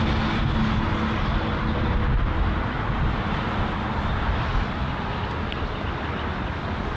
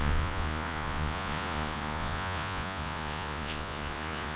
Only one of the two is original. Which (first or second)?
first